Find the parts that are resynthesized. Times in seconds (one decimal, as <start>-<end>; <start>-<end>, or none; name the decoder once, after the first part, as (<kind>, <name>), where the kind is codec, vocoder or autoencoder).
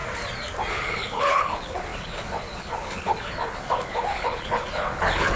0.7-5.4 (codec, HILCodec)